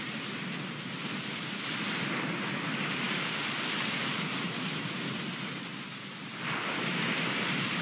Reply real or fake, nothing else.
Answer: real